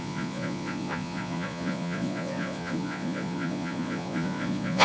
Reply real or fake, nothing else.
fake